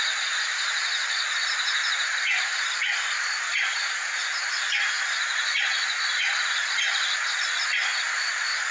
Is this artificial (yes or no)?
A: no